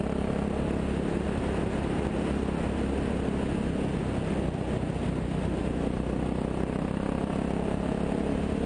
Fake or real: real